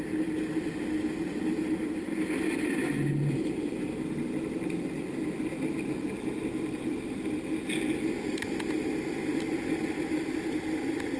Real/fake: real